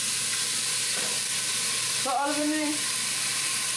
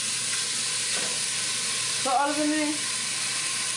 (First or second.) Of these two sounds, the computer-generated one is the first